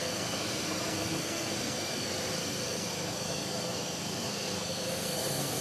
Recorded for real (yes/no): no